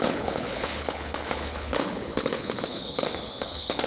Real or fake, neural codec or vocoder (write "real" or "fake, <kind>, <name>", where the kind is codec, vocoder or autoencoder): fake, codec, HILCodec